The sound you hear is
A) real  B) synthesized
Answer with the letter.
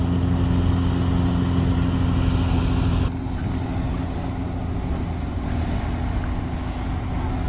A